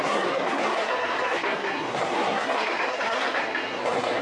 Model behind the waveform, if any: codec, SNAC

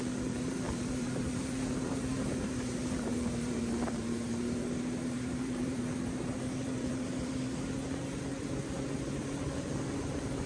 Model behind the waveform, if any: vocoder, BigVGAN v2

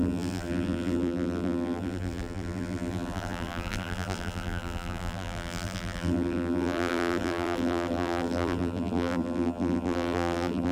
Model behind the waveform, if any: vocoder, BigVGAN v2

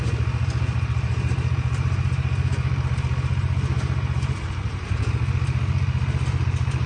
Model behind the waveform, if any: none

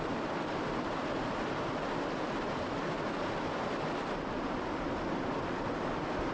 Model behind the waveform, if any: none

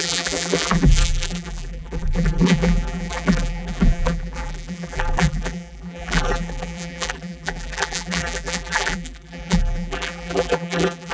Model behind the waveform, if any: vocoder, BigVGAN v2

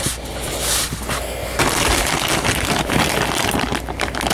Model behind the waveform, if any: none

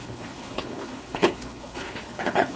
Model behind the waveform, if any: codec, HILCodec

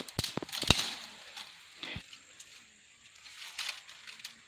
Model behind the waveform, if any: vocoder, BigVGAN v2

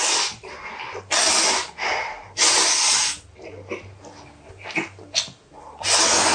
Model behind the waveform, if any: none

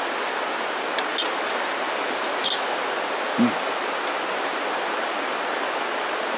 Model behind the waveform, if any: none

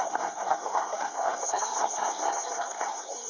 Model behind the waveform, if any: codec, SNAC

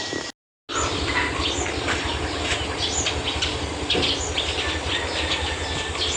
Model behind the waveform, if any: none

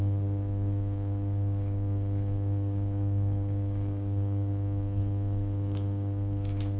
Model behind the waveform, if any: codec, DAC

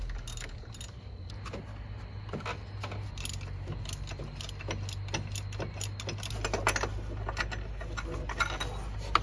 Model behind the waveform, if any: none